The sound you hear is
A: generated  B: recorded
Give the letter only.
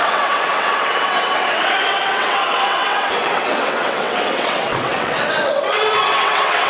A